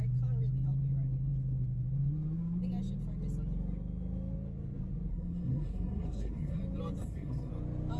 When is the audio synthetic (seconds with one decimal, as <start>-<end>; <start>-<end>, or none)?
5.1-6.6; 7.0-7.5